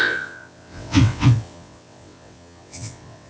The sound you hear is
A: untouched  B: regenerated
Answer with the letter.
B